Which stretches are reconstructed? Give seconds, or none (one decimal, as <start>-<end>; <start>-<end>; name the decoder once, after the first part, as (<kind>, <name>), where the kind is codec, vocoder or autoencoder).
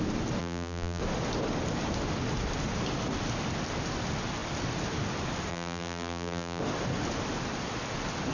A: 0.4-1.0 (vocoder, BigVGAN v2); 5.5-6.6